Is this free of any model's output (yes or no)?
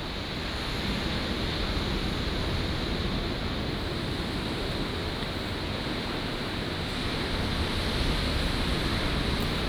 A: yes